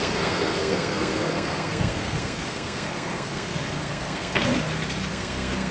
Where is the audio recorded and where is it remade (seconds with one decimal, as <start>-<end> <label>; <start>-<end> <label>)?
0.0-4.5 remade; 4.5-5.1 recorded; 5.1-5.7 remade